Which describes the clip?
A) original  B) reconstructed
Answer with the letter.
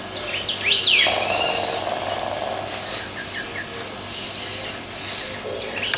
A